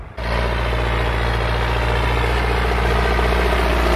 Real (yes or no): yes